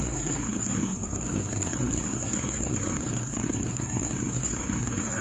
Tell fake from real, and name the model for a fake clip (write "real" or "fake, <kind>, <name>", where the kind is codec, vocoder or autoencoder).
fake, codec, SNAC